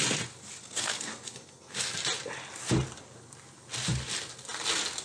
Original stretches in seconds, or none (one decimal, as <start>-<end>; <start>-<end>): 0.0-0.6; 1.9-5.0